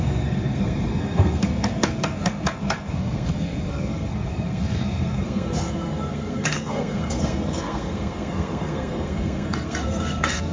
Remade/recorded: remade